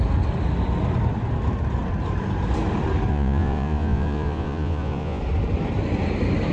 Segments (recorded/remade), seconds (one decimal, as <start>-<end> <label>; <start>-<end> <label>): 0.0-3.1 recorded; 3.1-5.2 remade; 5.2-6.5 recorded